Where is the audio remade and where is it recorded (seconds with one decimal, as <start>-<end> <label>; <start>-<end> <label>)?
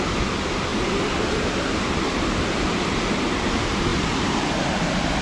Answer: 0.0-3.9 recorded; 3.9-5.2 remade